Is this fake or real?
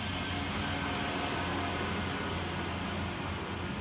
real